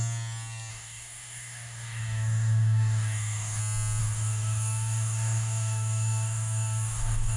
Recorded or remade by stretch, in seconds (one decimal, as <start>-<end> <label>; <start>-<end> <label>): 0.0-0.7 recorded; 0.7-3.6 remade; 3.6-4.0 recorded; 4.0-7.4 remade